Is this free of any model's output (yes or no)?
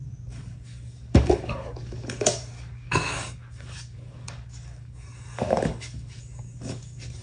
no